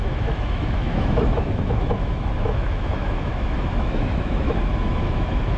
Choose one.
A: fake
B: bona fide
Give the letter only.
A